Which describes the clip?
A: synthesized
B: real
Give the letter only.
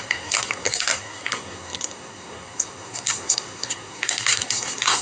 A